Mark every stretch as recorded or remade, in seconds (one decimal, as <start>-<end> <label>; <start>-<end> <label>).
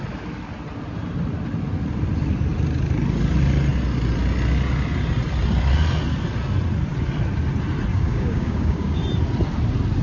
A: 0.0-7.9 recorded; 7.9-9.0 remade; 9.0-10.0 recorded